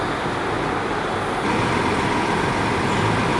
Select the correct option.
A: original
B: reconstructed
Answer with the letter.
A